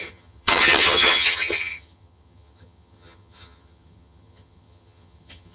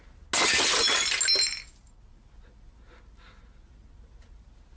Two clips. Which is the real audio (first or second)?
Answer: second